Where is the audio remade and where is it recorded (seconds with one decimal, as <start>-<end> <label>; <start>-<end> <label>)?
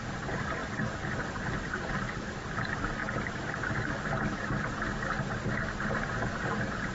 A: 0.0-3.0 remade; 3.0-6.4 recorded; 6.4-6.9 remade